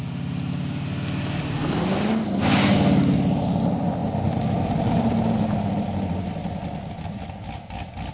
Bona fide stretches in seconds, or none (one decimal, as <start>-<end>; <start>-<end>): 0.0-4.0; 6.2-8.1